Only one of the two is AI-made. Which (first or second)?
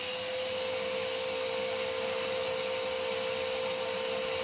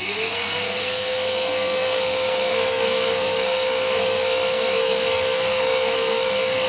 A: second